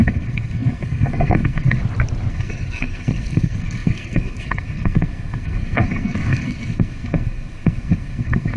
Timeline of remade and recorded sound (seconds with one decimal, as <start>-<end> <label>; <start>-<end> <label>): 0.0-1.8 remade; 1.8-2.3 recorded; 2.3-8.6 remade